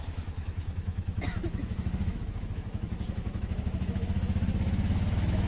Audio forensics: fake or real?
fake